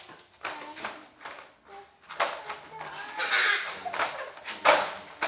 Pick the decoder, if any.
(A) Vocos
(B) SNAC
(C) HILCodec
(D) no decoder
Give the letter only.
D